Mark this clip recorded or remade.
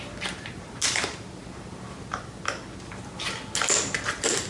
recorded